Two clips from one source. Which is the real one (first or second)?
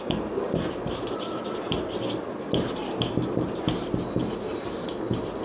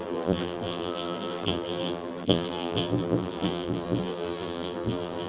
first